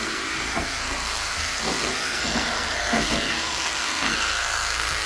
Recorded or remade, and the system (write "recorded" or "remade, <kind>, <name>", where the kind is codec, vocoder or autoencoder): remade, codec, SNAC